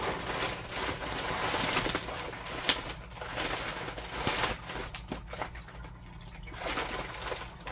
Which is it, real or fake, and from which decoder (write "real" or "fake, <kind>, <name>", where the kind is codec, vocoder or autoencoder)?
real